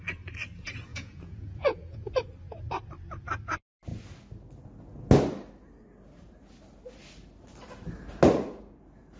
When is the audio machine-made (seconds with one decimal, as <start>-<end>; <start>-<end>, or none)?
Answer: 0.9-2.1